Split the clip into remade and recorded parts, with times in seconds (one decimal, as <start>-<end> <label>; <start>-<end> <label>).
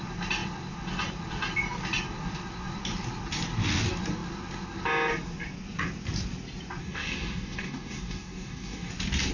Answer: 0.0-6.8 recorded; 6.8-8.9 remade; 8.9-9.3 recorded